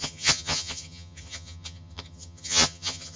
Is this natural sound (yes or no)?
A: no